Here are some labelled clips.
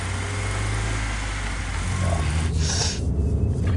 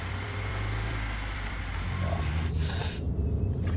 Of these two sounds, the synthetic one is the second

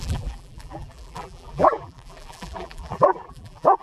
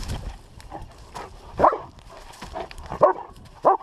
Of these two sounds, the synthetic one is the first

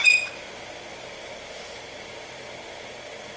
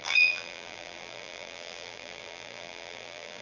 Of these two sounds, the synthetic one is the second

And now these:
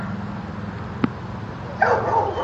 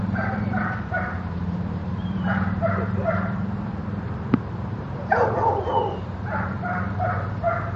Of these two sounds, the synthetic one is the second